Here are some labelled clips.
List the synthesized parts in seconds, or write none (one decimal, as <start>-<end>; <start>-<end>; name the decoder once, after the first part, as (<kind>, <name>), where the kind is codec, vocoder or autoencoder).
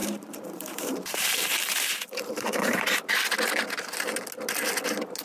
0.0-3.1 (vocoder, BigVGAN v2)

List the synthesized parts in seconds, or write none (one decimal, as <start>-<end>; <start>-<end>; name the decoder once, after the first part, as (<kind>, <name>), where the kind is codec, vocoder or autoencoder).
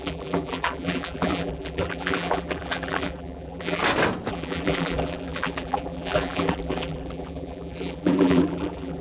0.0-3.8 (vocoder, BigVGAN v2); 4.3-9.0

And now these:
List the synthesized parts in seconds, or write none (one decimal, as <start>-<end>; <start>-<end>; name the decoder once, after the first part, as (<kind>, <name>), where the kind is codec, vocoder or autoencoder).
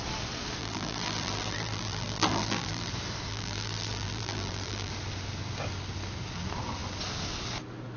0.6-2.9 (vocoder, BigVGAN v2); 3.3-4.9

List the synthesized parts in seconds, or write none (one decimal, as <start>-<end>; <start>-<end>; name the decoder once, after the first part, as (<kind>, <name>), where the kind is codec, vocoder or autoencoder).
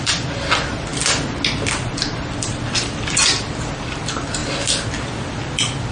0.0-0.9 (vocoder, BigVGAN v2); 1.9-5.9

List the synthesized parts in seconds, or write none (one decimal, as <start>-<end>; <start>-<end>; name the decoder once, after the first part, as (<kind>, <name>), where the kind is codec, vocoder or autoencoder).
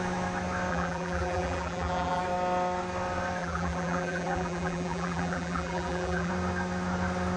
0.7-2.2 (vocoder, BigVGAN v2); 3.4-6.3